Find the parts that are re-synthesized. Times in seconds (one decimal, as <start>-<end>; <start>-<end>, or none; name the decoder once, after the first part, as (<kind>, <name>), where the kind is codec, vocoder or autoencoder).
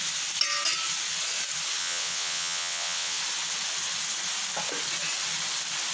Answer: 1.8-3.2 (vocoder, WaveNeXt)